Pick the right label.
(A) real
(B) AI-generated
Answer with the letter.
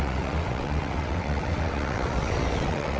B